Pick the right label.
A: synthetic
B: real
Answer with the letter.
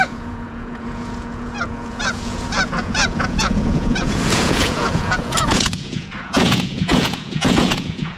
A